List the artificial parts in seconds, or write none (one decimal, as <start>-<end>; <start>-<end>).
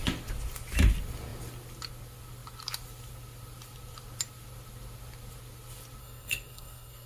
6.0-7.1